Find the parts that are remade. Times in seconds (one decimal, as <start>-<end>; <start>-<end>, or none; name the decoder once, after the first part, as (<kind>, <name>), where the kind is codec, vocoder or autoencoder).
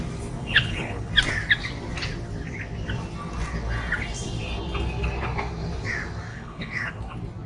0.4-1.1 (codec, HILCodec); 6.3-6.9